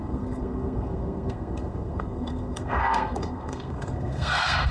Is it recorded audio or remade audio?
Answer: remade